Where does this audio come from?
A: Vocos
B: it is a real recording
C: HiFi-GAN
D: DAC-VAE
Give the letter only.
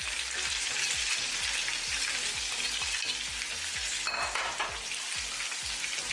B